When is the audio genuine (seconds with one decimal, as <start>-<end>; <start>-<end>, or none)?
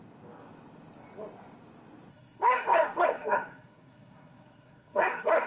0.0-2.1